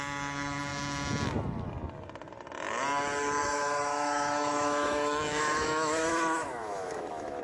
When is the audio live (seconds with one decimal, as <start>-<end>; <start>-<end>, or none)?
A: 0.0-3.4

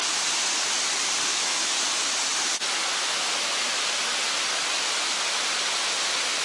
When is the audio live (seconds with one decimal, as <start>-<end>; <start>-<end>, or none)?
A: 0.0-1.3; 1.8-6.4

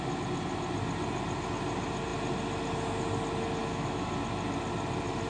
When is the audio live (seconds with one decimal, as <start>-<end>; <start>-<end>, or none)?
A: 0.0-3.6; 4.1-5.3

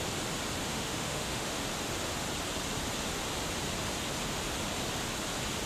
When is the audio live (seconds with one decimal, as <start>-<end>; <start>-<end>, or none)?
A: 0.0-0.7; 1.6-5.7